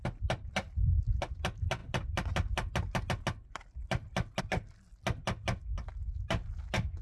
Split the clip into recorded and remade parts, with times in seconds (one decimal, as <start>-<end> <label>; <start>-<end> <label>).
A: 0.0-7.0 recorded